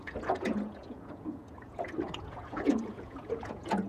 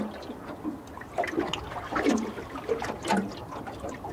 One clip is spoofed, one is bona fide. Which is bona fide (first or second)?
second